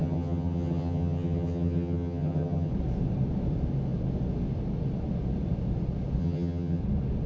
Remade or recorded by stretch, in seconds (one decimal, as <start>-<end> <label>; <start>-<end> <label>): 0.0-2.7 remade; 2.7-6.2 recorded; 6.2-6.8 remade; 6.8-7.3 recorded